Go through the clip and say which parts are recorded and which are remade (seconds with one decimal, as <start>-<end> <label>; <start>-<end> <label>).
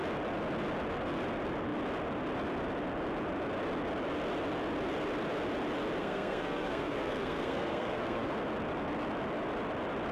0.0-6.0 recorded; 6.0-8.3 remade; 8.3-10.1 recorded